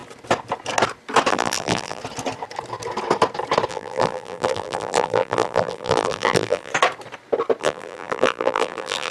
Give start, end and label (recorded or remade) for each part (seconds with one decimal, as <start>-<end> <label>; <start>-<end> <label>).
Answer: 0.0-1.3 recorded; 1.3-2.0 remade; 2.0-3.7 recorded; 3.7-6.7 remade; 6.7-7.6 recorded; 7.6-9.1 remade